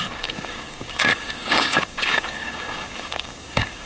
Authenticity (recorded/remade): remade